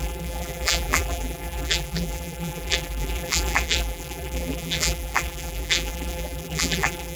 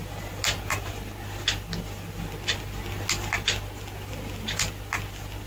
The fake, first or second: first